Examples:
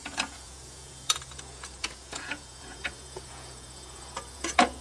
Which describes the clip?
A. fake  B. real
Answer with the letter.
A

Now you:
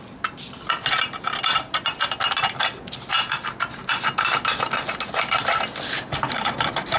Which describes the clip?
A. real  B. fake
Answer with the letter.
A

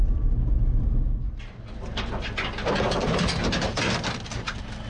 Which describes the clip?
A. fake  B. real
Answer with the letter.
B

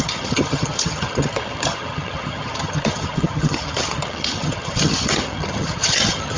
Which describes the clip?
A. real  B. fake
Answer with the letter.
B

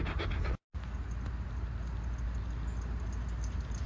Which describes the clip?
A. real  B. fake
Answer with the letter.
A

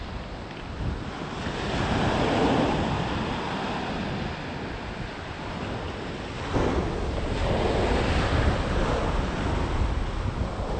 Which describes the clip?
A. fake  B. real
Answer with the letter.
B